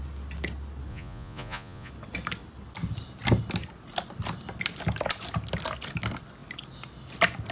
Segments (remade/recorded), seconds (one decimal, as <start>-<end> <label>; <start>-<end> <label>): 0.0-0.9 recorded; 0.9-1.9 remade; 1.9-7.5 recorded